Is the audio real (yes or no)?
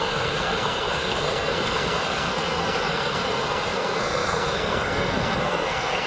no